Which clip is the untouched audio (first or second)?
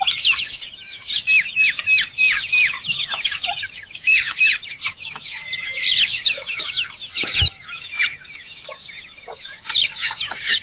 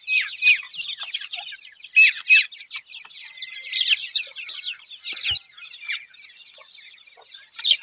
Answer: second